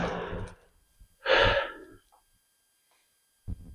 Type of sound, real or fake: real